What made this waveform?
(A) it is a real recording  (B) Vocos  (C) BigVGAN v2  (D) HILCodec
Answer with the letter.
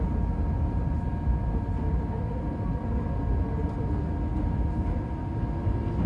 A